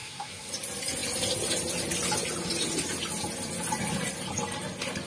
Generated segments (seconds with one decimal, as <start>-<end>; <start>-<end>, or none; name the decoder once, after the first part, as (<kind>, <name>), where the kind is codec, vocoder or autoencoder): 0.0-0.5 (codec, SNAC)